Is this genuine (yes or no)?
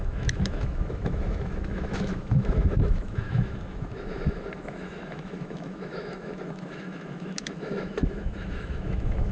no